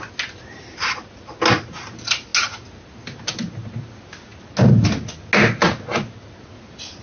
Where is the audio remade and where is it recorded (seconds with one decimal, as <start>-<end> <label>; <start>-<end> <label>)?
0.0-7.0 recorded